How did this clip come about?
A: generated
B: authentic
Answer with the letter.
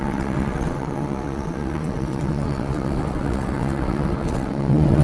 A